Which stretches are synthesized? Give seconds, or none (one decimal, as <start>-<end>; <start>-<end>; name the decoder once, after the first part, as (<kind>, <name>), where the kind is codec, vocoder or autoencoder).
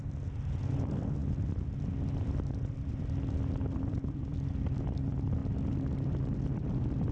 0.7-5.4 (vocoder, BigVGAN v2); 6.2-7.1